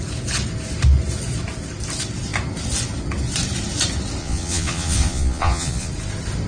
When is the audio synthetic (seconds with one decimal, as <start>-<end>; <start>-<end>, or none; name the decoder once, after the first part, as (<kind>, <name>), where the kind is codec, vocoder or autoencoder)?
4.2-5.9 (vocoder, Vocos)